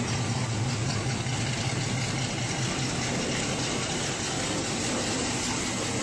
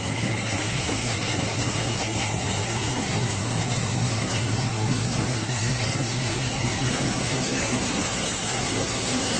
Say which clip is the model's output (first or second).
second